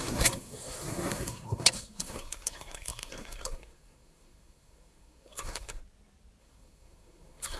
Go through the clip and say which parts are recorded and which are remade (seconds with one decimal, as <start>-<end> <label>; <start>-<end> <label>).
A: 0.0-5.8 remade; 5.8-6.4 recorded; 6.4-7.6 remade